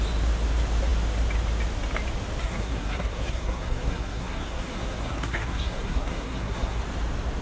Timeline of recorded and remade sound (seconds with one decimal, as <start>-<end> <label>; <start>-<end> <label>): 0.0-2.4 recorded; 2.4-6.8 remade; 6.8-7.4 recorded